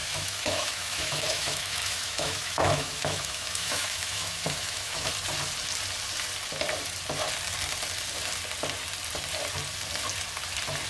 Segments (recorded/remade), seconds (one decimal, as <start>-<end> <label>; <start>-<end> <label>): 0.0-5.1 remade; 5.1-10.9 recorded